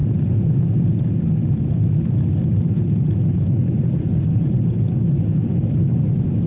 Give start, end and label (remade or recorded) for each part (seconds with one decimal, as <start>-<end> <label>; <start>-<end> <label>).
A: 0.0-0.6 remade; 0.6-2.5 recorded; 2.5-5.9 remade; 5.9-6.5 recorded